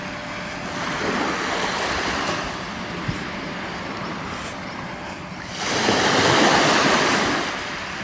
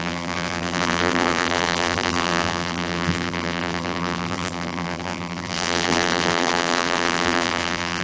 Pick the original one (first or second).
first